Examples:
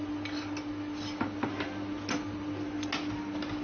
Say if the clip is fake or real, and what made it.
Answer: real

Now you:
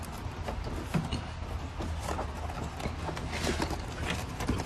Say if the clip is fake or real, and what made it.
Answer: real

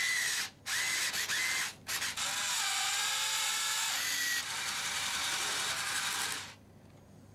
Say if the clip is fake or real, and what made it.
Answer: real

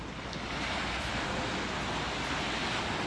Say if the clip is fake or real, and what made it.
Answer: real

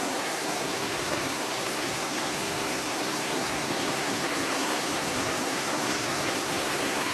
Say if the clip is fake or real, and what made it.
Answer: fake, codec, SNAC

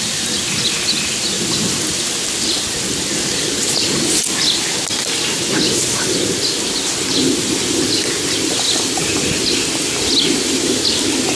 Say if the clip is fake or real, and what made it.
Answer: real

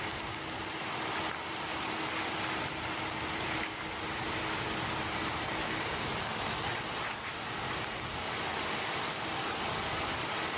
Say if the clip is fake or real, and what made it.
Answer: real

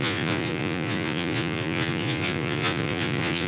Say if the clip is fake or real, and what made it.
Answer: fake, vocoder, Vocos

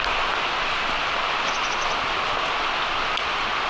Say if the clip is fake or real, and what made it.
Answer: real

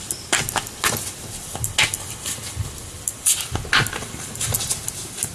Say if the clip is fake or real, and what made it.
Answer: real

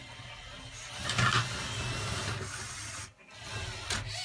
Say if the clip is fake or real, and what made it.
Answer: real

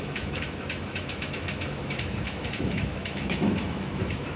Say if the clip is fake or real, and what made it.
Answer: fake, autoencoder, DAC-VAE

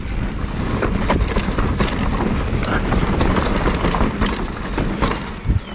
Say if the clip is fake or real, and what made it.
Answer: real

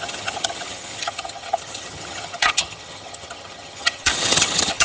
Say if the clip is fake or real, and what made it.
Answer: fake, vocoder, HiFi-GAN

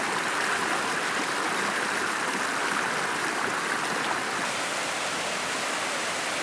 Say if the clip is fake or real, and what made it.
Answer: real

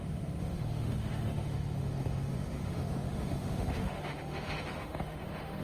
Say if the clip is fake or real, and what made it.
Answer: fake, autoencoder, DAC-VAE